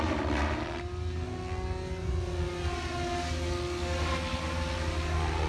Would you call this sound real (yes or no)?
yes